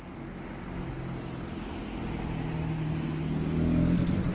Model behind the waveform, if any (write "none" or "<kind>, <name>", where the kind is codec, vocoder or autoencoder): none